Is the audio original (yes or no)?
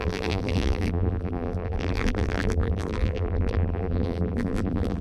no